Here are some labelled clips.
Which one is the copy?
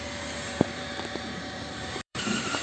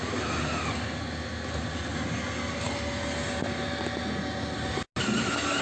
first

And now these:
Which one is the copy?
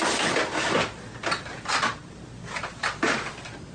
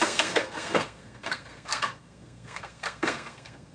second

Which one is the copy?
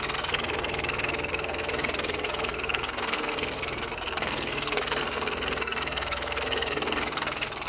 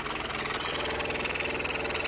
first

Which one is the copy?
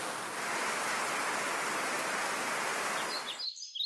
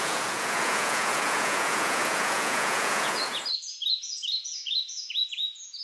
second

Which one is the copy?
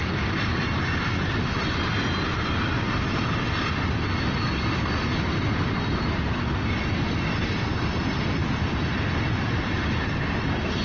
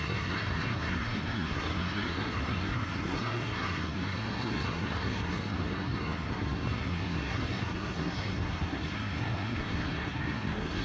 second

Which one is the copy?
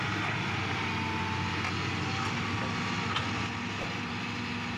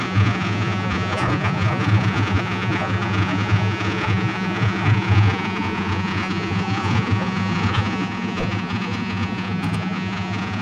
second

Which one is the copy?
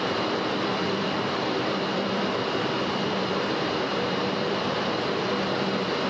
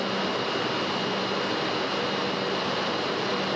first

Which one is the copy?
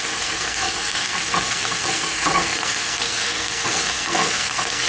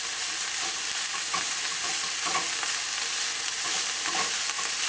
first